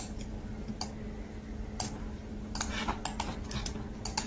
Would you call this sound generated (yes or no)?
no